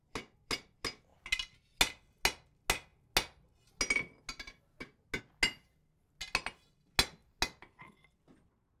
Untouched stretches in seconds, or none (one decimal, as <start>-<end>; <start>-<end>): 0.0-8.8